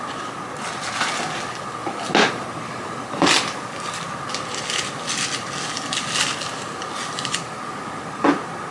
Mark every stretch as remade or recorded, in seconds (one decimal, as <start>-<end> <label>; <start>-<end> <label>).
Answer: 0.0-8.7 recorded

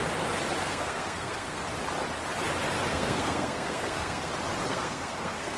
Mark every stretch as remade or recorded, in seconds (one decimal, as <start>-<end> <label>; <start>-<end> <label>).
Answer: 0.0-0.6 recorded; 0.6-1.6 remade; 1.6-2.9 recorded; 2.9-4.3 remade; 4.3-4.7 recorded; 4.7-5.6 remade

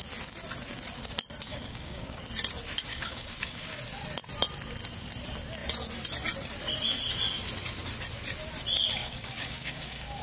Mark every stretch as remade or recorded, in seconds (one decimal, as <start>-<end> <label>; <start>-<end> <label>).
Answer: 0.0-1.5 recorded; 1.5-2.2 remade; 2.2-2.9 recorded; 2.9-3.8 remade; 3.8-9.0 recorded; 9.0-10.2 remade

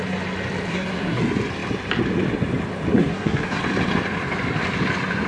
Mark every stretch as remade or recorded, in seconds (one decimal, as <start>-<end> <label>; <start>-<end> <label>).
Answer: 0.0-0.7 recorded; 0.7-1.2 remade; 1.2-2.9 recorded; 2.9-3.6 remade; 3.6-5.3 recorded